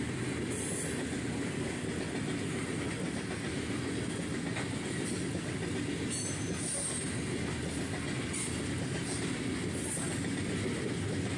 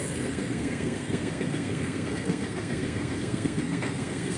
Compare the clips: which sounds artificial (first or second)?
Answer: second